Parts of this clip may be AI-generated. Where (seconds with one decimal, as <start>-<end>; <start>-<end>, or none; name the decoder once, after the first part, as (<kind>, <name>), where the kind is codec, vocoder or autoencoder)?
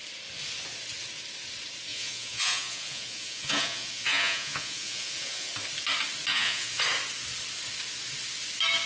1.9-5.5 (vocoder, Vocos); 6.3-6.8